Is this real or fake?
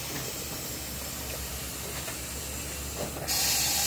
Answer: real